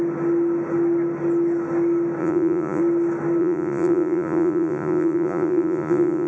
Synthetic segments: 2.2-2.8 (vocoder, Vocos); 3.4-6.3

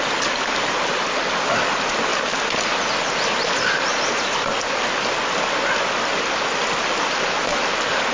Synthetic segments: none

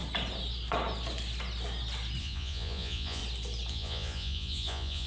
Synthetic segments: 2.2-3.2 (vocoder, Vocos); 3.7-5.1

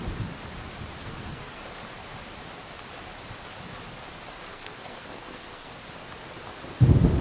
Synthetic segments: 1.0-1.6 (codec, SNAC); 4.5-5.8

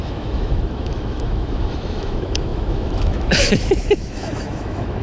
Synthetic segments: 0.0-5.0 (autoencoder, DAC-VAE)

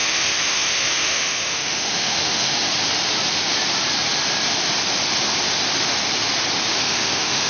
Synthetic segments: 0.0-2.6 (autoencoder, DAC-VAE); 6.7-7.5

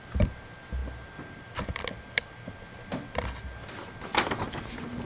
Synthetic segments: none